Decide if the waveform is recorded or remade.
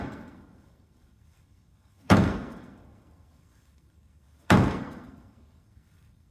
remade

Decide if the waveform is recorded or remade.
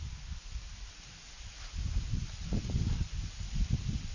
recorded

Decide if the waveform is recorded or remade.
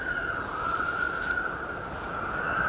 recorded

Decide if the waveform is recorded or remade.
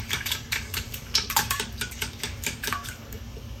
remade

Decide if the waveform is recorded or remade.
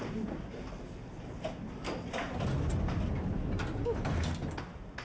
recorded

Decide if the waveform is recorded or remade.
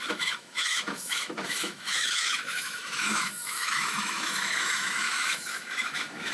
remade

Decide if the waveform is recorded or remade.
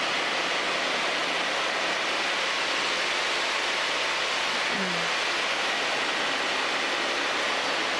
recorded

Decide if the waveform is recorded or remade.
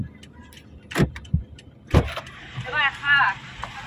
recorded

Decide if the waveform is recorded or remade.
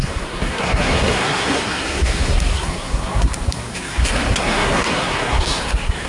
remade